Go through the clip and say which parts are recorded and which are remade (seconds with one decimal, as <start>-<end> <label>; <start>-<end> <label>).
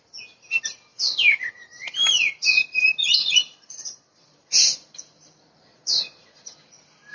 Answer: 0.0-3.0 recorded; 3.0-4.5 remade; 4.5-5.7 recorded; 5.7-6.5 remade; 6.5-7.1 recorded